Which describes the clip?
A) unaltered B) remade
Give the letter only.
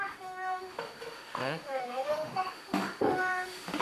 B